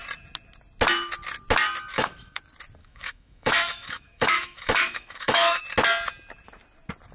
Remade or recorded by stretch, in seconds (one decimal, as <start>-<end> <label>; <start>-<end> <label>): 0.0-1.9 recorded; 1.9-2.4 remade; 2.4-2.8 recorded; 2.8-5.6 remade; 5.6-7.1 recorded